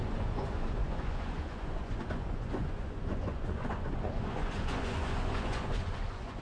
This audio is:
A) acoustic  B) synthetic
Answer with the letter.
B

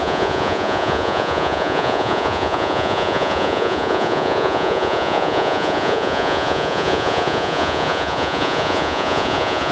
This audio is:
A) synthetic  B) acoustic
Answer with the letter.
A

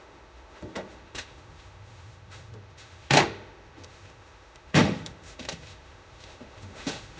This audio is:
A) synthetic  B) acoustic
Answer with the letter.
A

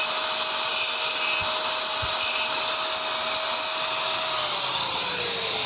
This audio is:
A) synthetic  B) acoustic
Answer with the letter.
B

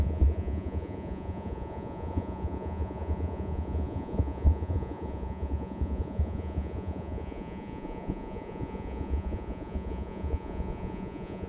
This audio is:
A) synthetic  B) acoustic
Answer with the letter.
A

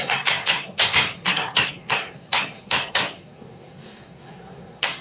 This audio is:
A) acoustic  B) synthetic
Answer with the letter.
B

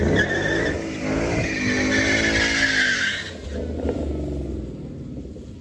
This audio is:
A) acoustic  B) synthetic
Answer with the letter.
A